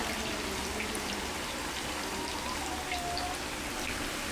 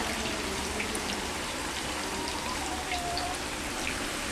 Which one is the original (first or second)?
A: first